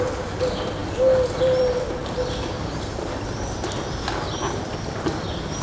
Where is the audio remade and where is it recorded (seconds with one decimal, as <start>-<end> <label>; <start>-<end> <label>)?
0.0-5.6 recorded